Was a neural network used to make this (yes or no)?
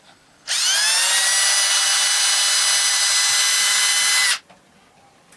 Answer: no